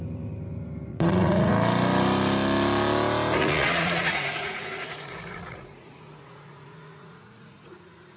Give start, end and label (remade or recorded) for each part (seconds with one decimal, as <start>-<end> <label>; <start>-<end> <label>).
0.0-0.9 recorded; 0.9-1.5 remade; 1.5-3.4 recorded; 3.4-8.2 remade